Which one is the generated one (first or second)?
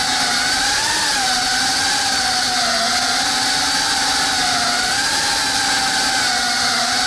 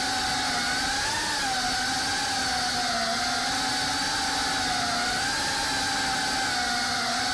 first